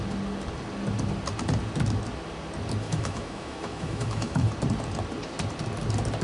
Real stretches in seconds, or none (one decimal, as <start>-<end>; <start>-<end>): 0.0-2.8; 4.5-6.2